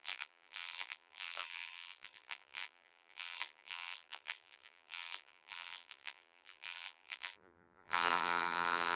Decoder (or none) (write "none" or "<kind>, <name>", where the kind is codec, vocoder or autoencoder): vocoder, BigVGAN v2